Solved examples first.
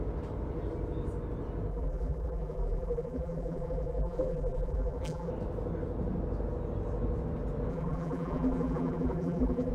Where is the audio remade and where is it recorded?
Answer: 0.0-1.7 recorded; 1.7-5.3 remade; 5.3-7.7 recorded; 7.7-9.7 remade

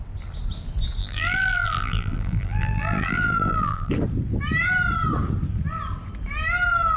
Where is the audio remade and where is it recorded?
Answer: 0.0-1.0 recorded; 1.0-3.9 remade; 3.9-7.0 recorded